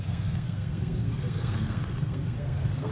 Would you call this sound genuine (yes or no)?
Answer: no